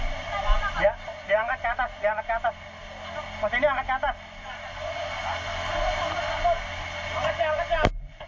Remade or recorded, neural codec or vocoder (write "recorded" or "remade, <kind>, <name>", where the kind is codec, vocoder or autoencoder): recorded